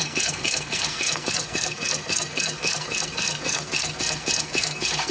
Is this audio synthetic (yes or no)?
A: yes